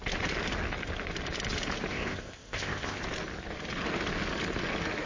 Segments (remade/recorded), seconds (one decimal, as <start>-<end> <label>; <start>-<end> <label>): 0.0-1.9 recorded; 1.9-3.0 remade; 3.0-5.1 recorded